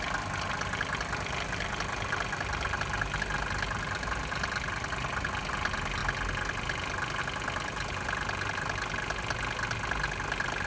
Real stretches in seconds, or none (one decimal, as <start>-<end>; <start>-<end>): 0.0-10.7